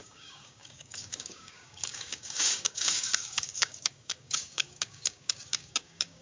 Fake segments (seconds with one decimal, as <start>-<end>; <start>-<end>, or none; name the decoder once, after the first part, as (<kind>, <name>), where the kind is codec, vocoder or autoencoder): 0.0-6.2 (codec, DAC)